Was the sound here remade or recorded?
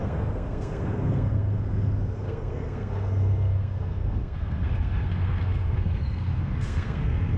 remade